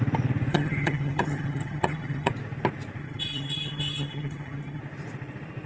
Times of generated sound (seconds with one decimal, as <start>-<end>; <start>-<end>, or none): 0.5-2.3; 3.0-4.8